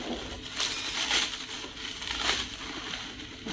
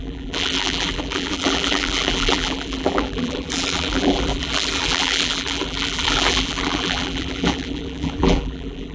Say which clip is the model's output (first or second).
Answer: second